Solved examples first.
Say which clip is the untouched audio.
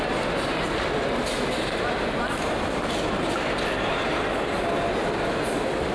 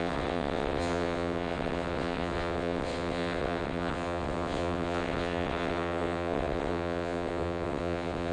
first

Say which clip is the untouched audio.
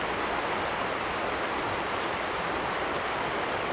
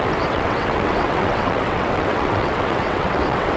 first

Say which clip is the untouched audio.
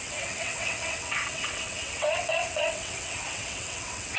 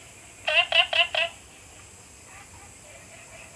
second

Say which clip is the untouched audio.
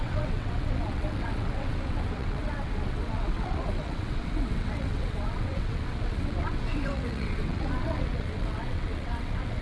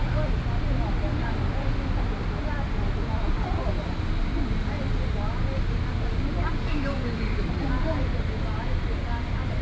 second